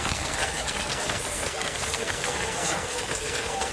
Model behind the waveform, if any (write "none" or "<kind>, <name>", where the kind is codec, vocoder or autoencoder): codec, SNAC